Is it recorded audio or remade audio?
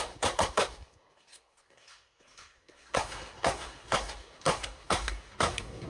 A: remade